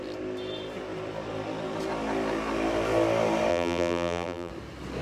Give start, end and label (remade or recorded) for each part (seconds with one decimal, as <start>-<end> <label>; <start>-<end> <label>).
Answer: 0.0-3.5 recorded; 3.5-4.5 remade; 4.5-5.0 recorded